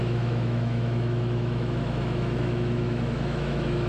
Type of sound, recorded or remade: remade